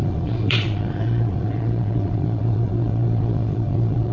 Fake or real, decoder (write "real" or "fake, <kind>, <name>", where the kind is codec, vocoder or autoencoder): fake, vocoder, Vocos